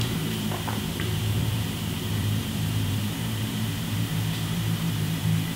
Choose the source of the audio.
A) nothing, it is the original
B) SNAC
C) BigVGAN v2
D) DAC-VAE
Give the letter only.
C